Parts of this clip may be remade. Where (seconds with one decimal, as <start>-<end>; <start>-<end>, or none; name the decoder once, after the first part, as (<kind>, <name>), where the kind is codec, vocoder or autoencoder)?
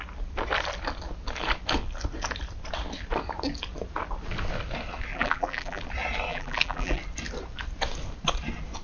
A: 5.1-5.8 (vocoder, BigVGAN v2); 6.3-7.0